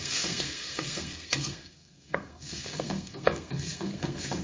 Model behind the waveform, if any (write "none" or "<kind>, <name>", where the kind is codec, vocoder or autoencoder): codec, SNAC